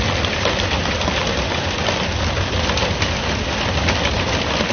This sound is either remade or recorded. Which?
recorded